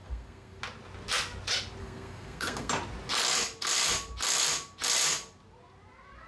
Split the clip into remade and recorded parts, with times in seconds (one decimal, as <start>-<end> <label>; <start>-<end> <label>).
0.0-0.6 remade; 0.6-1.8 recorded; 1.8-2.7 remade; 2.7-6.3 recorded